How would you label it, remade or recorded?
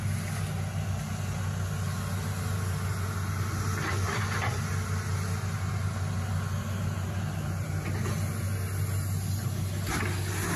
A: recorded